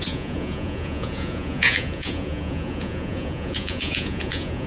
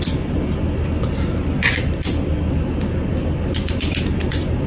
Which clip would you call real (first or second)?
second